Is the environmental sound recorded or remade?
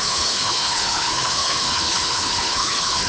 remade